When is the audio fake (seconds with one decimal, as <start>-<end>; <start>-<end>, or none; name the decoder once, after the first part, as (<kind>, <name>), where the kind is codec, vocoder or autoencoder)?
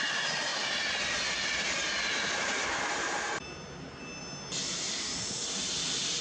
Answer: none